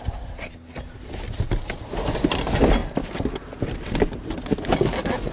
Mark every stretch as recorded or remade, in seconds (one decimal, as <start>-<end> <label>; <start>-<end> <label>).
0.0-5.3 recorded